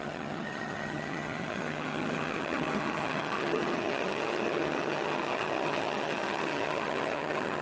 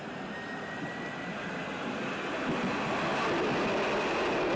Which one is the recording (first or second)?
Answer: second